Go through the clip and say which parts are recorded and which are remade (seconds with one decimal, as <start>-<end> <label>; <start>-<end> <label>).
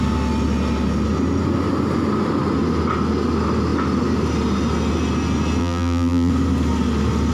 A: 0.0-5.6 recorded; 5.6-6.3 remade; 6.3-7.3 recorded